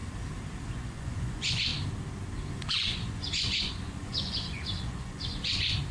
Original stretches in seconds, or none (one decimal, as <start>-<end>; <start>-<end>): 0.0-0.7; 1.7-2.5